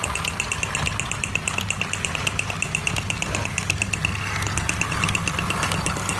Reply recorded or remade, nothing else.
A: recorded